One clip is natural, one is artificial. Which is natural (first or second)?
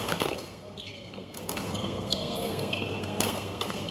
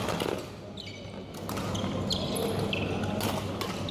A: second